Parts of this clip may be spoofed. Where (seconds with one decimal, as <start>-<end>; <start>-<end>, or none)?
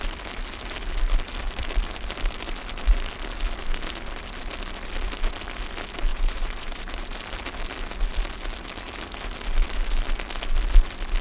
6.1-7.2